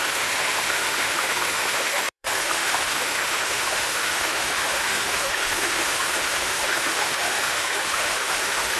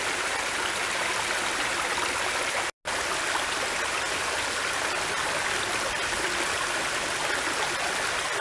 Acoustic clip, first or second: second